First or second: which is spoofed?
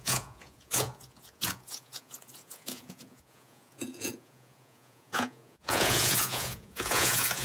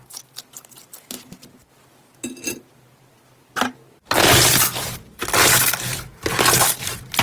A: first